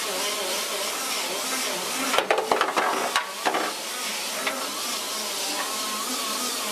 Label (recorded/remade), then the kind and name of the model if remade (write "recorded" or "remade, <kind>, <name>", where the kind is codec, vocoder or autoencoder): recorded